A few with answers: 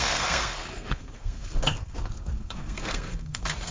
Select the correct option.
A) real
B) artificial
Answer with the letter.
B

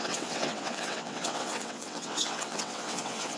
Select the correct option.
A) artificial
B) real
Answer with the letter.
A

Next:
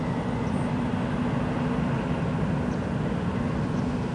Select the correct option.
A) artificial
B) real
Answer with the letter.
B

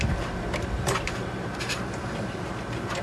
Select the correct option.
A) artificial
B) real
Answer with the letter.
A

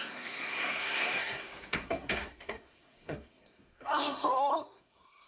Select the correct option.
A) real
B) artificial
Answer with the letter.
B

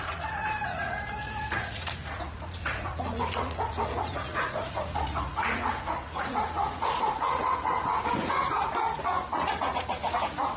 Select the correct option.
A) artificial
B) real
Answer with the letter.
A